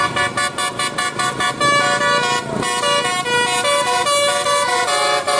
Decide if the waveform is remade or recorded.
recorded